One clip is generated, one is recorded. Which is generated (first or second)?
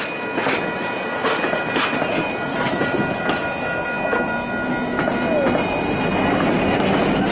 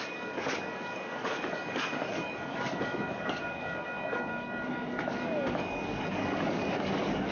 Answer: second